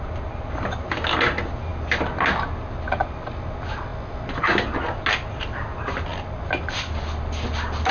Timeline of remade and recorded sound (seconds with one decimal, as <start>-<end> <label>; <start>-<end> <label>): 0.0-7.9 recorded